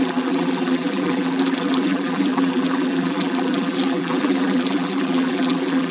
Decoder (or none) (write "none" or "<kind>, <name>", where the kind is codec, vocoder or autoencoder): vocoder, BigVGAN v2